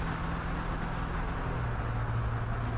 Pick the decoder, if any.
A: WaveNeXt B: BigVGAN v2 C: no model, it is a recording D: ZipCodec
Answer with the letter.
C